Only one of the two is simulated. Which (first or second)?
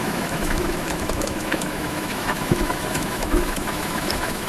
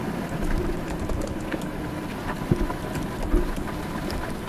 first